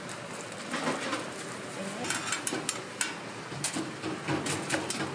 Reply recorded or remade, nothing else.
recorded